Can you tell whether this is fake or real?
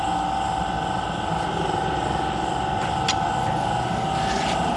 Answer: real